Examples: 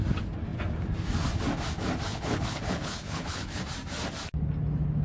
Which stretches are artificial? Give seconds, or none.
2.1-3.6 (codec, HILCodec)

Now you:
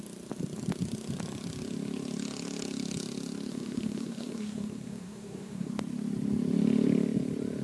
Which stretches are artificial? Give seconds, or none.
3.5-5.7 (codec, SNAC)

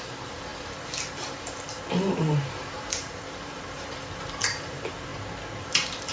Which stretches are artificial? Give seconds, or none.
0.0-5.1 (vocoder, BigVGAN v2); 5.6-6.1

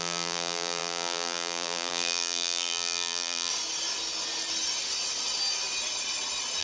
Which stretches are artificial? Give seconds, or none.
0.0-3.5 (vocoder, BigVGAN v2)

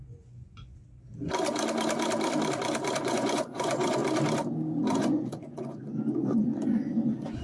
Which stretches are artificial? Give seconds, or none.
0.0-0.8 (vocoder, Vocos); 3.0-4.0; 4.9-7.4

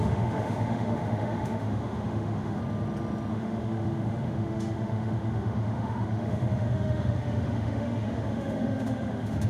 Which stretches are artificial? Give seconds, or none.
0.0-2.6 (autoencoder, DAC-VAE); 3.3-9.5